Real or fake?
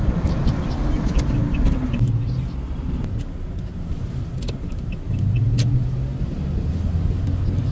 real